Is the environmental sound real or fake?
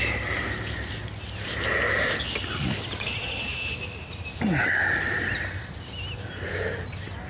real